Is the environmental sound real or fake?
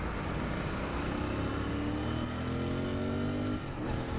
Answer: real